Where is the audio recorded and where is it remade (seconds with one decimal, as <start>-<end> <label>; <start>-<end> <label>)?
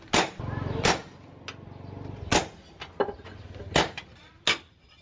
0.0-5.0 recorded